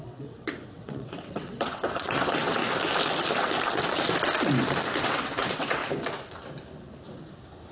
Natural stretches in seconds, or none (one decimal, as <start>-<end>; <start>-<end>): 2.6-5.0; 5.8-7.7